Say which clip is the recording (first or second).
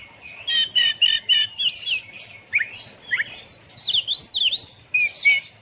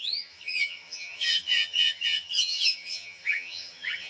first